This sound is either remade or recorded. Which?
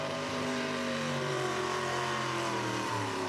remade